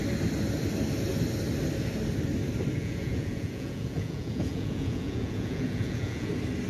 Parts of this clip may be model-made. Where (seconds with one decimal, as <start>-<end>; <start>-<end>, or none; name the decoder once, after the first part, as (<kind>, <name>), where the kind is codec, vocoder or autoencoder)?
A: 2.8-6.3 (vocoder, Vocos)